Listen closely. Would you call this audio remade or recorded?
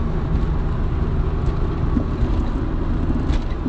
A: recorded